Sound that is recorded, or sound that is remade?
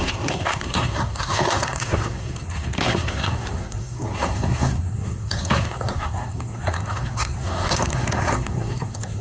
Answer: remade